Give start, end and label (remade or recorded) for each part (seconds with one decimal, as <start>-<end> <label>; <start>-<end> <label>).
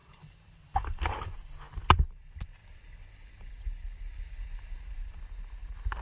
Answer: 0.0-6.0 recorded